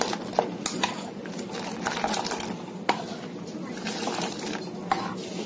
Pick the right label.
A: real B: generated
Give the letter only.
A